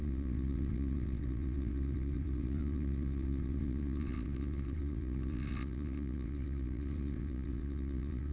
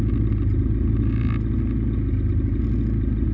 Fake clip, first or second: first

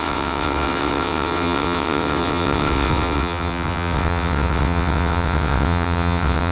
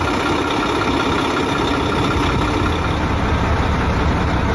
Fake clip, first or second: first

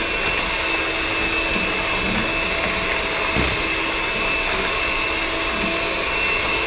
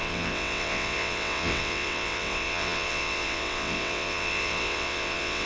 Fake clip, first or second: second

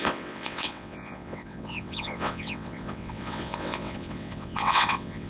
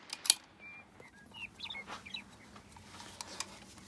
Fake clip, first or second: first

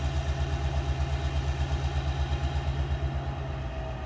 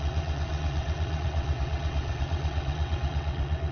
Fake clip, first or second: second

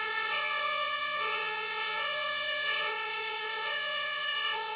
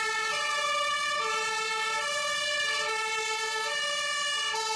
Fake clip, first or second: first